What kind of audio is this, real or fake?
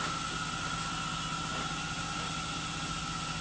real